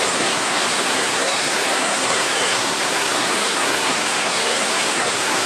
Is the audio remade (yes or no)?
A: yes